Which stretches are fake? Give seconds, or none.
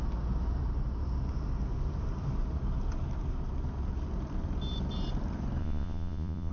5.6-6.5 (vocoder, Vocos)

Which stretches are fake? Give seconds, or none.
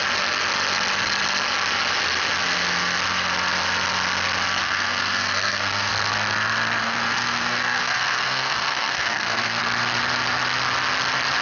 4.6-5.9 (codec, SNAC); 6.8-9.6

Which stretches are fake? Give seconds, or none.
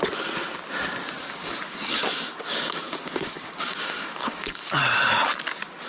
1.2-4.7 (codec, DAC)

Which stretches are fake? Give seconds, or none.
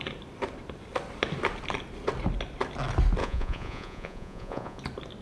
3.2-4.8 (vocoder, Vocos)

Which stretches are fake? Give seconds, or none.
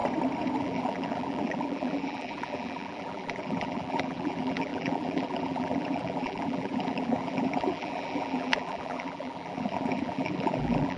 0.6-11.0 (vocoder, BigVGAN v2)